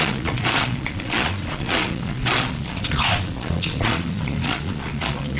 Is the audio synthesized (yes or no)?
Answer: yes